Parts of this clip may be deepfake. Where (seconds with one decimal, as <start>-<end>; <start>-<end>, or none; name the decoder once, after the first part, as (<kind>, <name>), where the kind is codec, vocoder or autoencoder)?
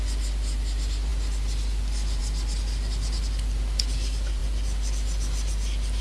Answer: none